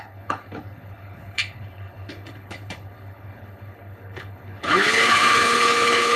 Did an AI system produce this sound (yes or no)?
yes